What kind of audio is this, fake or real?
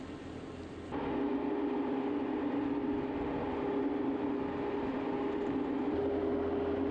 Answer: real